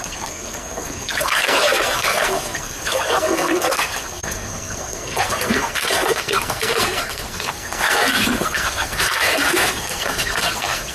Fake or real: fake